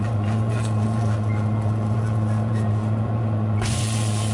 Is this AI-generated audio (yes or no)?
yes